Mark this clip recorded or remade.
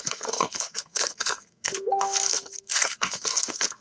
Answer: remade